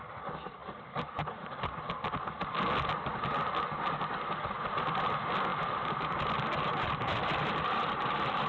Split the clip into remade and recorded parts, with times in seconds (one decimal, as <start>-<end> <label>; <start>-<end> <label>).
0.0-0.6 recorded; 0.6-1.7 remade; 1.7-5.5 recorded; 5.5-8.5 remade